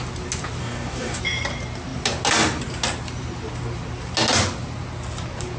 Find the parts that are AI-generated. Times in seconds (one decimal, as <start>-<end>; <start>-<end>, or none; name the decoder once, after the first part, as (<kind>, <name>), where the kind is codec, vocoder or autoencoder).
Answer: 0.6-1.2 (codec, DAC)